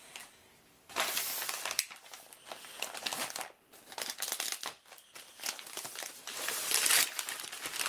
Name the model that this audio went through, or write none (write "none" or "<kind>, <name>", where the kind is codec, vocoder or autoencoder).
none